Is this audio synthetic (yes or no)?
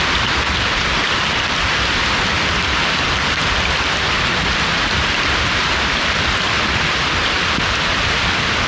no